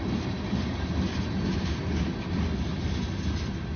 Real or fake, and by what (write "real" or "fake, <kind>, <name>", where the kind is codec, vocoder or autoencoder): real